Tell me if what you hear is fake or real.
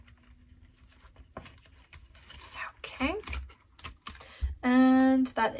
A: real